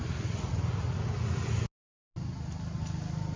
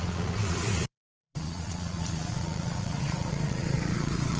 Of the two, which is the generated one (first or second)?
second